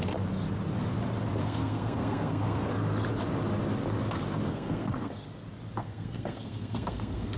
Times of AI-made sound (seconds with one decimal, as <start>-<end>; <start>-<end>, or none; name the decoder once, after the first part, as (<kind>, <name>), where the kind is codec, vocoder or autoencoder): 1.4-2.7 (codec, SNAC); 4.5-5.1; 5.8-7.4